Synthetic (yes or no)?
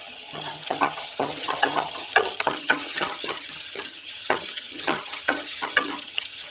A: yes